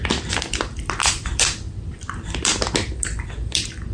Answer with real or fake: fake